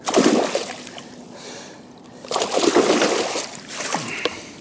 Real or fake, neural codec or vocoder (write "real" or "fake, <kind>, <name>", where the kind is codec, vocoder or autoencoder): real